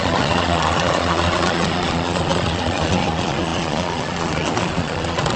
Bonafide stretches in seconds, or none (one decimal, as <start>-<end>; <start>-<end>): none